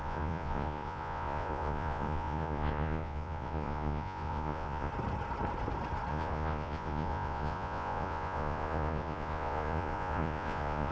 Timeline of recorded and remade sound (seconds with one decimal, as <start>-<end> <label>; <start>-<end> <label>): 0.0-4.9 remade; 4.9-6.1 recorded; 6.1-10.9 remade